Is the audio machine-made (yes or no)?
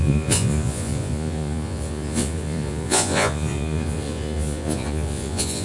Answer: yes